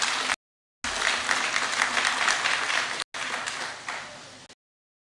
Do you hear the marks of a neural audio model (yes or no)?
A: no